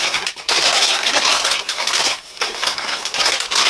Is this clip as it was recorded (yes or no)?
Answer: no